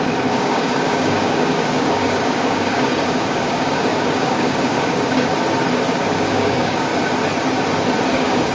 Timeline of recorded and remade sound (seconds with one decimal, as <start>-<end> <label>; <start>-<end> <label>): 0.0-5.3 remade; 5.3-5.9 recorded; 5.9-6.9 remade; 6.9-8.1 recorded; 8.1-8.5 remade